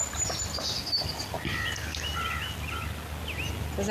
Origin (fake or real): real